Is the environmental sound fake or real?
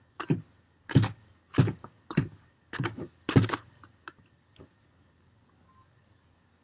fake